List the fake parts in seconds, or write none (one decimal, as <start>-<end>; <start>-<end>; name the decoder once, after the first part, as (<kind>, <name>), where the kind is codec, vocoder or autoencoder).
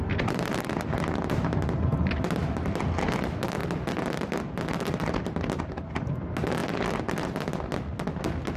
none